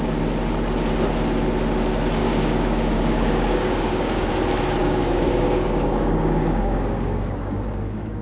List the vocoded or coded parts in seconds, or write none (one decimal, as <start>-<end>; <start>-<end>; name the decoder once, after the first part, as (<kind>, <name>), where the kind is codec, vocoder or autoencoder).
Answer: 2.2-4.3 (codec, DAC); 4.8-8.2